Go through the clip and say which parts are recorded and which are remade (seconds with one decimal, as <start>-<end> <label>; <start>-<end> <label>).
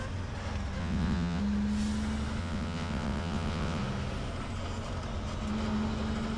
0.0-0.8 recorded; 0.8-1.4 remade; 1.4-2.4 recorded; 2.4-3.8 remade; 3.8-6.4 recorded